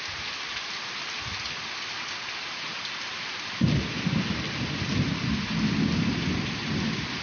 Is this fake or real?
real